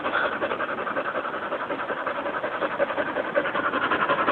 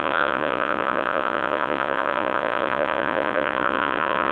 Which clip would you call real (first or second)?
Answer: first